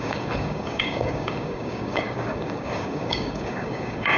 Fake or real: fake